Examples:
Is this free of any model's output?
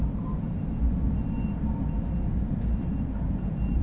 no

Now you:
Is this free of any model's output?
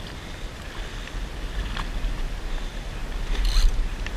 yes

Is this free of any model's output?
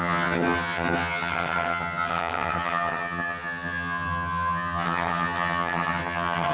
no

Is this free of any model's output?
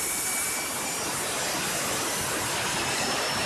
yes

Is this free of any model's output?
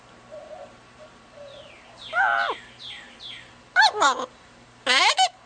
no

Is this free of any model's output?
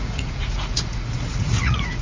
no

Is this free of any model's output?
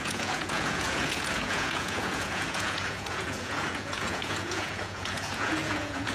no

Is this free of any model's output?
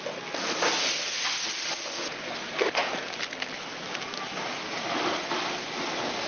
yes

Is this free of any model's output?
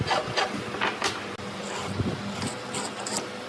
yes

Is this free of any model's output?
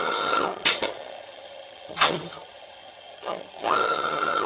no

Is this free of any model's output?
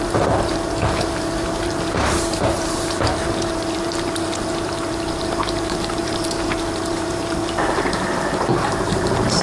no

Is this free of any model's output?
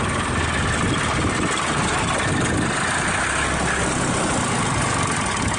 yes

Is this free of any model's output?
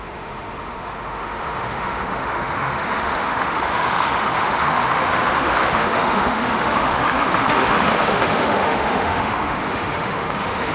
no